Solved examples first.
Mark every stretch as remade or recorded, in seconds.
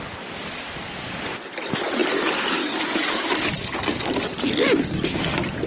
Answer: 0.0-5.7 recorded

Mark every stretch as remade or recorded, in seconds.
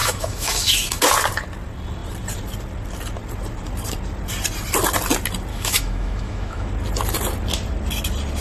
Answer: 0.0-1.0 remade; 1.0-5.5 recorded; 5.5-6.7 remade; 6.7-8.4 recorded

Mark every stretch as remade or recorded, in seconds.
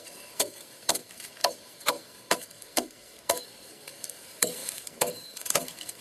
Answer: 0.0-6.0 remade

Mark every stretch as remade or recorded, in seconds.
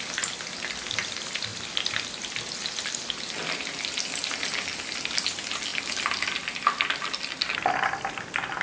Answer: 0.0-8.6 recorded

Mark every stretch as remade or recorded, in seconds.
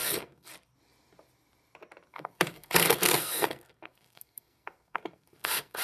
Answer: 0.0-0.5 remade; 0.5-2.1 recorded; 2.1-5.8 remade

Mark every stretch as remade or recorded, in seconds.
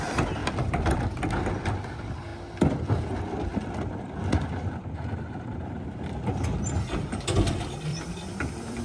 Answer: 0.0-0.4 recorded; 0.4-1.0 remade; 1.0-7.9 recorded; 7.9-8.8 remade